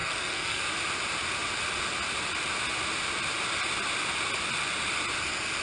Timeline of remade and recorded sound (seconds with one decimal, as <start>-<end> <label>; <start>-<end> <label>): 0.0-0.6 remade; 0.6-5.6 recorded